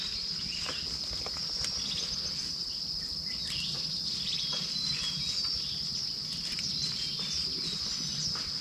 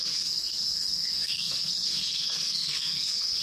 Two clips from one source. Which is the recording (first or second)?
first